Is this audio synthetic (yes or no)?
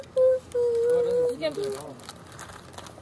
no